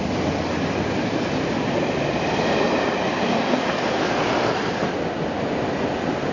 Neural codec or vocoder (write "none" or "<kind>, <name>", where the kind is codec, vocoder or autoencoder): none